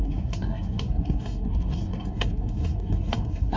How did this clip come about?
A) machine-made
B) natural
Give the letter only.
A